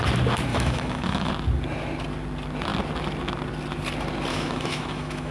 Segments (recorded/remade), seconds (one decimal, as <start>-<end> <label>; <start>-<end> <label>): 0.0-0.5 recorded; 0.5-1.3 remade; 1.3-4.3 recorded; 4.3-5.3 remade